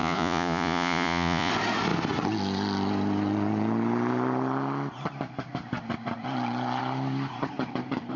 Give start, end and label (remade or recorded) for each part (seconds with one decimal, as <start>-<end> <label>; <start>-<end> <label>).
0.0-1.5 remade; 1.5-8.2 recorded